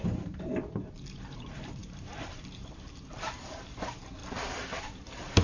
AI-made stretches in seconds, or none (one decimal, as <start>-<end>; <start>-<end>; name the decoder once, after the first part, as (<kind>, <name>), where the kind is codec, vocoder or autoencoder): 0.0-4.2 (vocoder, BigVGAN v2); 4.8-5.4